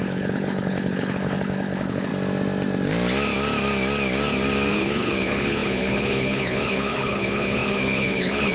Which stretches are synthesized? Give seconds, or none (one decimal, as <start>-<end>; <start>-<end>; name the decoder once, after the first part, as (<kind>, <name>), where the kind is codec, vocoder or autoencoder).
0.0-2.1 (codec, HILCodec); 4.7-8.5